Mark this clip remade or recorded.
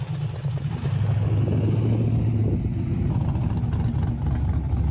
recorded